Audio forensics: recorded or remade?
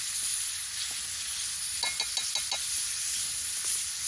recorded